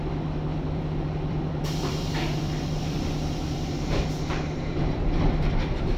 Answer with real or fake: fake